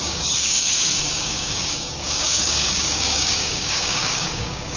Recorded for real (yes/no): no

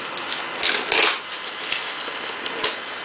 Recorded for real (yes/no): yes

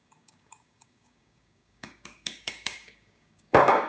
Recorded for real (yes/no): no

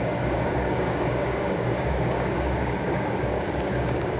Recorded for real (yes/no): no